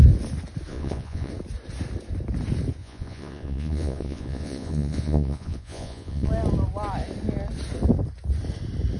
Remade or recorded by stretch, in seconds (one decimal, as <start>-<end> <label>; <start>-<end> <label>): 0.0-0.7 recorded; 0.7-1.3 remade; 1.3-2.8 recorded; 2.8-6.3 remade; 6.3-9.0 recorded